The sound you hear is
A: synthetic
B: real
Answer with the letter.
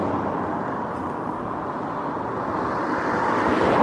B